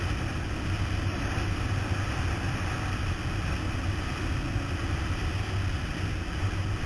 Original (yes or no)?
yes